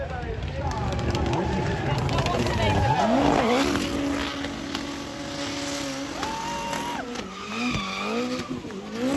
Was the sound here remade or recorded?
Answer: recorded